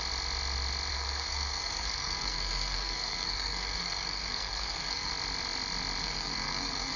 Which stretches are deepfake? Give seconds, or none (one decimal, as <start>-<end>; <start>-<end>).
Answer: 0.9-5.1; 6.0-7.0